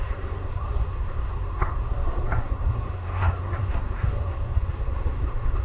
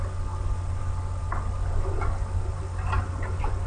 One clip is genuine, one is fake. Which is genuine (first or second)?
second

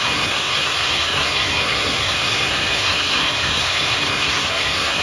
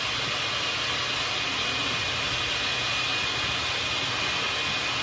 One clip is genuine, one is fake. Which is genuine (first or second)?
second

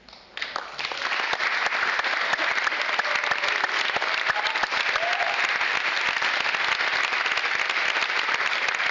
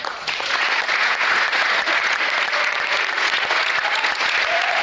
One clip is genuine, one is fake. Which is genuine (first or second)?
first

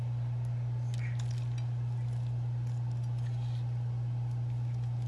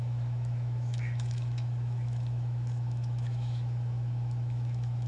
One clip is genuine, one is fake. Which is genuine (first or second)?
first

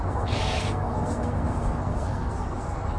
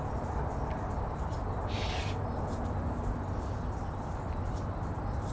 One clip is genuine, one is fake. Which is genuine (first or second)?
second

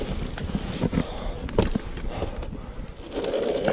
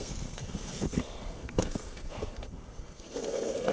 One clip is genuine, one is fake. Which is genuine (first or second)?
first